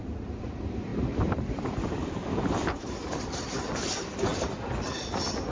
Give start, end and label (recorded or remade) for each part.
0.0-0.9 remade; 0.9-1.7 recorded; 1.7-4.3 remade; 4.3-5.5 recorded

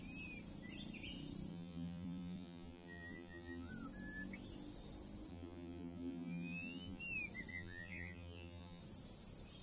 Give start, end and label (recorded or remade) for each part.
0.0-1.5 recorded; 1.5-3.7 remade; 3.7-5.3 recorded; 5.3-7.0 remade; 7.0-7.5 recorded; 7.5-8.8 remade; 8.8-9.6 recorded

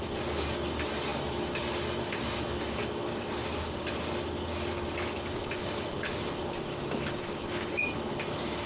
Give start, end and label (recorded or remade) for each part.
0.0-1.1 remade; 1.1-5.2 recorded; 5.2-8.7 remade